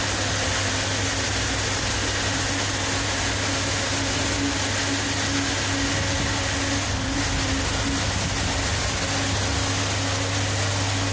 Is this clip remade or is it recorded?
recorded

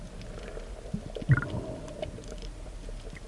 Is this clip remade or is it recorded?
recorded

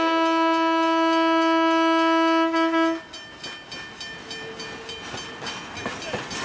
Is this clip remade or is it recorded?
recorded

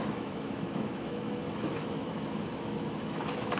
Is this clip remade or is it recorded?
remade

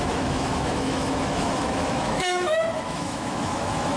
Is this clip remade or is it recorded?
remade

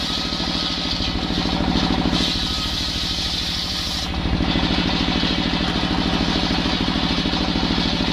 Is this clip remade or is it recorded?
recorded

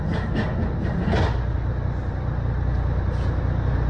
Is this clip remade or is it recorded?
recorded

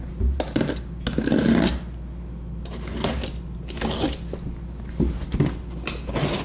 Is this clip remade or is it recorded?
recorded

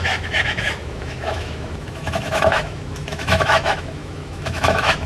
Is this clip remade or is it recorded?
remade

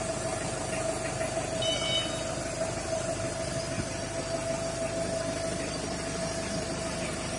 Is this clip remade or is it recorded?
recorded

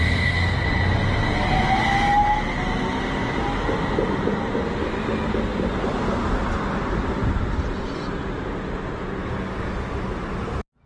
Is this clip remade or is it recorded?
recorded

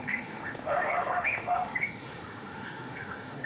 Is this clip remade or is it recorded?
remade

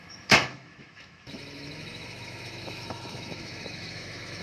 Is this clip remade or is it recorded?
remade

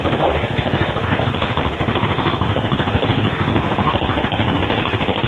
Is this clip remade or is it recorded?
remade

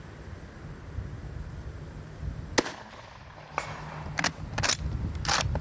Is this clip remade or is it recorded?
recorded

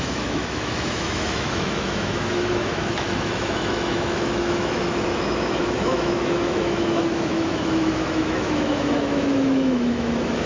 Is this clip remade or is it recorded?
remade